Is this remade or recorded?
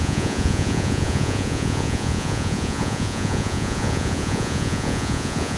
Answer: remade